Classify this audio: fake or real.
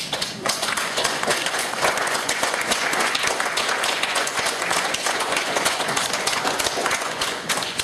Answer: fake